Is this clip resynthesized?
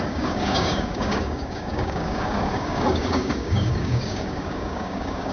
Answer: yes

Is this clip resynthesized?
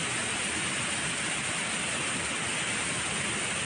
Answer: no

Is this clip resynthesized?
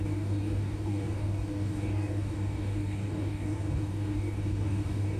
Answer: yes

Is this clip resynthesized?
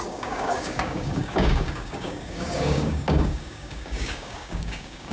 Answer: yes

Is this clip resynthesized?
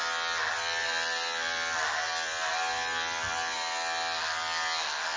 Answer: no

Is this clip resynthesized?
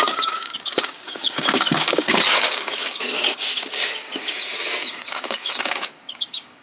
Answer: yes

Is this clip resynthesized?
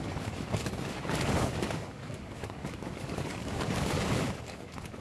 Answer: yes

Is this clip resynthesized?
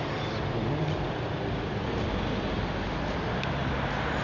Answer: no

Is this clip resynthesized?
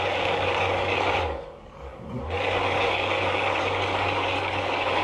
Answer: yes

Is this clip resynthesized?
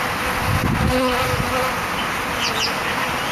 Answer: no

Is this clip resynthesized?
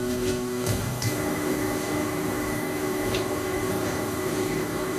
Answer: yes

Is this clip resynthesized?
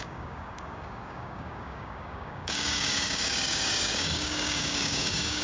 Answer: yes